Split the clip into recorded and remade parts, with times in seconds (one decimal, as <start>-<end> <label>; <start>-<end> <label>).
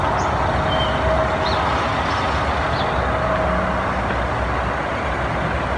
0.0-5.8 recorded